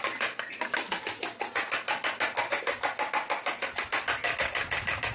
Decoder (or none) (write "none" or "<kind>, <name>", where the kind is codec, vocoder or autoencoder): none